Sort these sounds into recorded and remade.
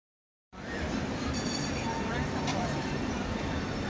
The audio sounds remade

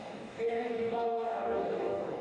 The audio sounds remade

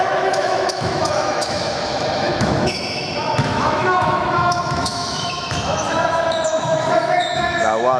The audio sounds remade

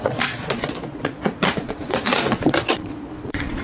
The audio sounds remade